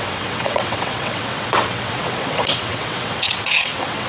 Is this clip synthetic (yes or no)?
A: yes